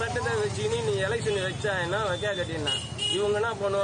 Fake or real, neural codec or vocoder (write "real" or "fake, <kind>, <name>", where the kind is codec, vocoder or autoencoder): real